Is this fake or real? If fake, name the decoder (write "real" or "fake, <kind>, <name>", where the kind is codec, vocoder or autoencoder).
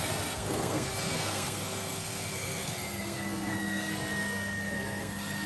fake, codec, SNAC